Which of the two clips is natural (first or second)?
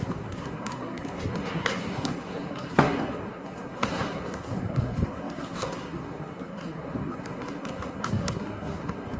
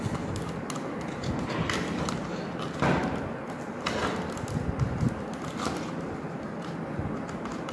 second